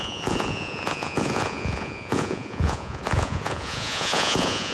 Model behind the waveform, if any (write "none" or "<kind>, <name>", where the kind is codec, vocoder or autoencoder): vocoder, Vocos